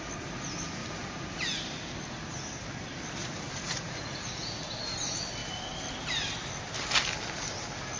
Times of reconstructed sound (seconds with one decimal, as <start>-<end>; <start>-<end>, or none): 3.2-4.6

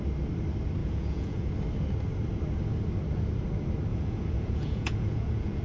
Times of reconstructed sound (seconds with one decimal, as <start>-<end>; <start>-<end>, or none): 0.8-1.5; 3.9-5.6

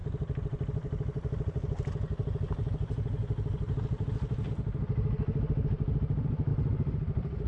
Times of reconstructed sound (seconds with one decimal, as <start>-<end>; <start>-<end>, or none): none

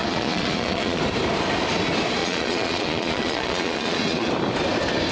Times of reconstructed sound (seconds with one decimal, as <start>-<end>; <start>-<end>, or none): 0.0-1.0; 2.2-4.3

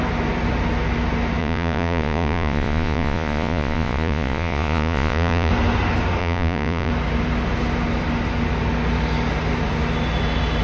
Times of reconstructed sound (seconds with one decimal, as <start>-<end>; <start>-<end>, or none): 1.4-5.5; 6.2-6.9

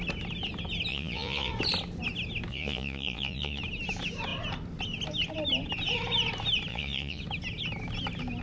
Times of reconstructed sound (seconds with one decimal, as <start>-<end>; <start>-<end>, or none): 0.9-1.5; 2.5-3.6; 6.7-7.2

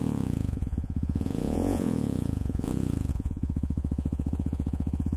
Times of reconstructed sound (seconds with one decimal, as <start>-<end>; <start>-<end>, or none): 0.0-5.2

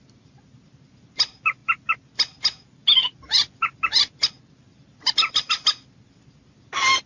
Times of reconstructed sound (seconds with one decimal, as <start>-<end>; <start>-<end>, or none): none